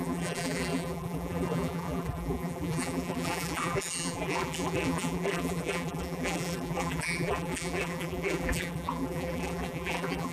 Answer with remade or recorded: remade